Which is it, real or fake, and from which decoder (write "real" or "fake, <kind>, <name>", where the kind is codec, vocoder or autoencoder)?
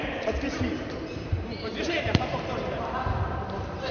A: fake, vocoder, BigVGAN v2